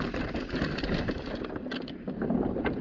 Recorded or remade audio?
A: recorded